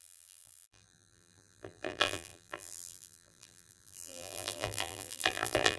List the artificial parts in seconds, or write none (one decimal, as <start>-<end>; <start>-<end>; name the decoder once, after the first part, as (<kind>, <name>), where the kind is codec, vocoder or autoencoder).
0.0-5.8 (vocoder, BigVGAN v2)

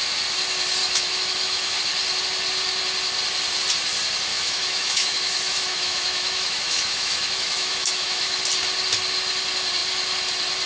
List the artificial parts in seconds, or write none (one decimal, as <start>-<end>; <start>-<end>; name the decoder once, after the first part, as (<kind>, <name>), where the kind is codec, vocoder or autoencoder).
0.8-1.8 (autoencoder, DAC-VAE); 4.3-8.4

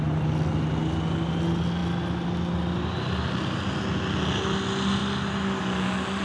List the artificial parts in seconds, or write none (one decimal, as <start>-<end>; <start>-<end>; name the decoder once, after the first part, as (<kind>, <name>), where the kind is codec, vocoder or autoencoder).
none

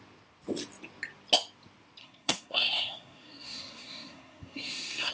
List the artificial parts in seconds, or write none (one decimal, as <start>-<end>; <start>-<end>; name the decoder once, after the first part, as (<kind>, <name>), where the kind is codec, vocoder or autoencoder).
2.0-5.1 (codec, SNAC)

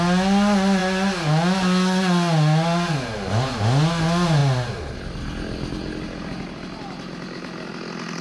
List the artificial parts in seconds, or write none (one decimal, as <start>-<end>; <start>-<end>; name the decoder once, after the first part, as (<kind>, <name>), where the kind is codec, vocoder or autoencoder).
none

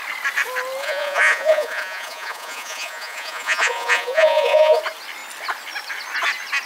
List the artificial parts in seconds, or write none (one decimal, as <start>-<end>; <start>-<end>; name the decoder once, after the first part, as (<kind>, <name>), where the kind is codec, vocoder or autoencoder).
0.8-4.8 (vocoder, Vocos)

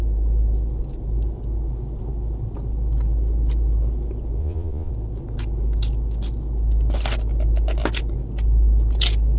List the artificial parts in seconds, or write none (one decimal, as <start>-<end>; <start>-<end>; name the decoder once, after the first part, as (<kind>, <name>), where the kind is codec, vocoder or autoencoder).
4.4-4.9 (vocoder, Vocos)

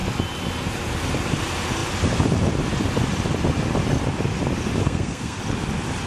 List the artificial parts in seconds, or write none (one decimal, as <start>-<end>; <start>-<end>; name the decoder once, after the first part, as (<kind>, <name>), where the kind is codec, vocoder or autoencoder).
4.8-5.4 (codec, SNAC)